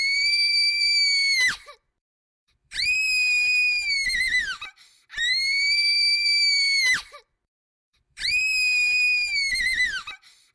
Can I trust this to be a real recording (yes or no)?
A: no